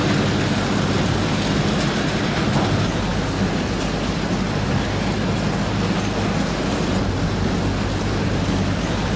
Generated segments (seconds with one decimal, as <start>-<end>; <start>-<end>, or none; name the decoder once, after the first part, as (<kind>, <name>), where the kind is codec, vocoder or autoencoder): none